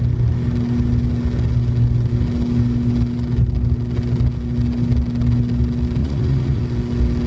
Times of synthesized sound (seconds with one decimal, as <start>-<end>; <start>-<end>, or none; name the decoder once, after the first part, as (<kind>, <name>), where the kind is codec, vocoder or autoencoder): 6.0-6.6 (vocoder, Vocos)